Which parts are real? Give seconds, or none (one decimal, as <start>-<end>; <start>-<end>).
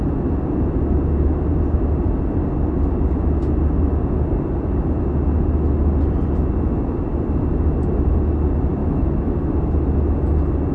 0.0-8.8; 9.5-10.7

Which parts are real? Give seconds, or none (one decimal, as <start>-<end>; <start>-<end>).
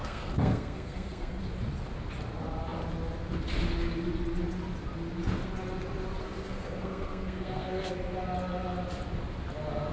1.4-6.2; 7.9-9.9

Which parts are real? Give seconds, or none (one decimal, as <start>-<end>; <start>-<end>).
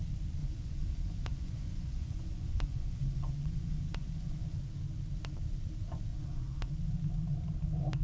0.0-0.4; 4.6-6.1; 6.7-8.0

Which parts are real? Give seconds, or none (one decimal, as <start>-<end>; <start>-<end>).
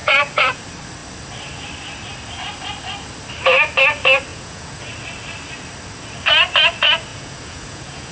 0.6-4.3; 4.9-7.1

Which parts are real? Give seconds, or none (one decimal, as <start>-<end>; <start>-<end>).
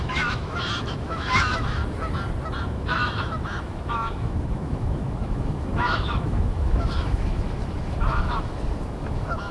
1.8-2.6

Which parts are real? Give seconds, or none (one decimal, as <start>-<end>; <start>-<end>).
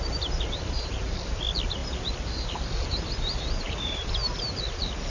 0.0-5.1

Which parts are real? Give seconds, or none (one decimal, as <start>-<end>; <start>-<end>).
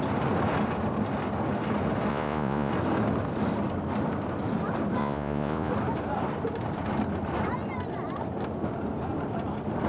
0.0-2.1; 2.7-5.0; 5.7-9.9